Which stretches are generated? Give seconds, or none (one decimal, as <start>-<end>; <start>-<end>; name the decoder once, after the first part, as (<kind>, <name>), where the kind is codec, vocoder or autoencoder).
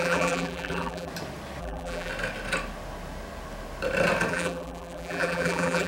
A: 0.0-1.1 (vocoder, BigVGAN v2); 1.6-2.1; 4.3-5.9